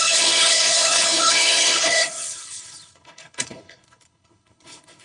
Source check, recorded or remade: remade